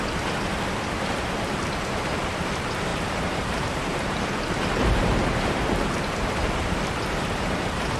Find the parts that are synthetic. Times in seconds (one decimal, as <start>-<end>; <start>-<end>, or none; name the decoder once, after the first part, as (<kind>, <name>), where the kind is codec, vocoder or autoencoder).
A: 2.9-5.5 (vocoder, BigVGAN v2)